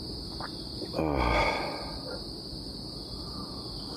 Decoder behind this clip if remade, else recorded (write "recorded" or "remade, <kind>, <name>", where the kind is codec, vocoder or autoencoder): recorded